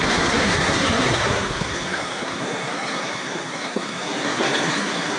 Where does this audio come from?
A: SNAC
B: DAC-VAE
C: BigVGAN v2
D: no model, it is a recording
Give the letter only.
A